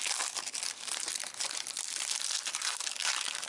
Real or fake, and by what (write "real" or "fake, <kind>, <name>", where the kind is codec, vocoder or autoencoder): real